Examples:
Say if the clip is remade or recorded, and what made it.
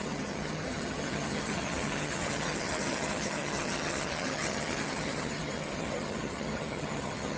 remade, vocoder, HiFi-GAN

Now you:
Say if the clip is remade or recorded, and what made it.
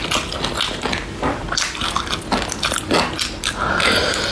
recorded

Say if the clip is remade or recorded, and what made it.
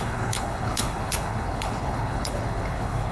remade, codec, HILCodec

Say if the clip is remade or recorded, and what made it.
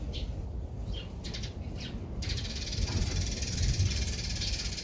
remade, vocoder, BigVGAN v2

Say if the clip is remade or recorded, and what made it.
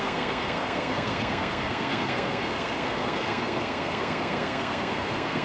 remade, codec, SNAC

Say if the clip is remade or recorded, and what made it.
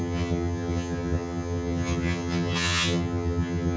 remade, vocoder, HiFi-GAN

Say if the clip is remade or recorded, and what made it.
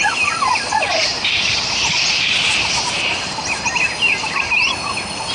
recorded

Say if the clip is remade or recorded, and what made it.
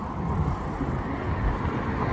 recorded